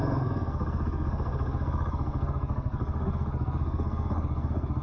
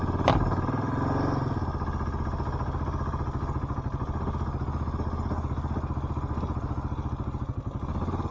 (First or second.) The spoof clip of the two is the first